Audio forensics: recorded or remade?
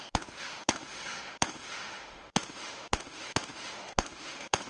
remade